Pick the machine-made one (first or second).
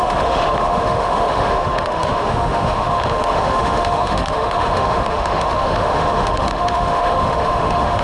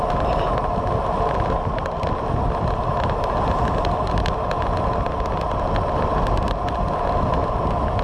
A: first